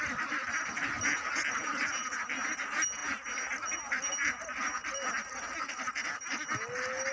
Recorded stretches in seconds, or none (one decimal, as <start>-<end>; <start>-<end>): 0.0-7.1

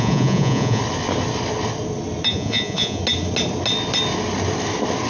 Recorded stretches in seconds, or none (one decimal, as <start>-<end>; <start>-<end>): 0.8-2.3; 3.0-5.1

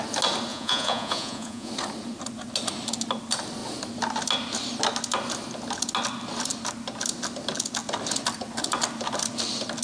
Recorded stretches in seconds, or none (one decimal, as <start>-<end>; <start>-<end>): 0.0-0.5; 1.7-9.8

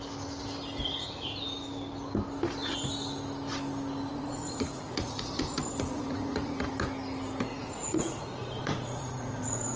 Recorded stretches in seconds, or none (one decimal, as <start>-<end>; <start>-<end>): 0.0-4.1; 6.7-7.5

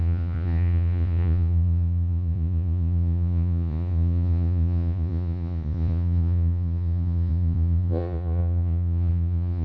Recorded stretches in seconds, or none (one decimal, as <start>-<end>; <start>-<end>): none

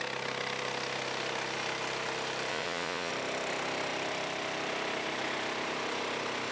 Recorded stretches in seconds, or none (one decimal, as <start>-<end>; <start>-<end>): 0.0-2.5; 3.1-6.5

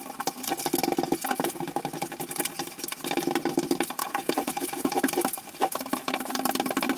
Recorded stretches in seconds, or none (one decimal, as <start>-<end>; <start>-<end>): 0.0-4.0; 4.9-7.0